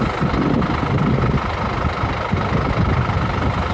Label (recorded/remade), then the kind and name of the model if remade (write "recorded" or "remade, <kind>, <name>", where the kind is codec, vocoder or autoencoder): recorded